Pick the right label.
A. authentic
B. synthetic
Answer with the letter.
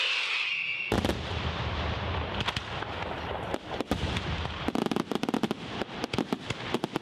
A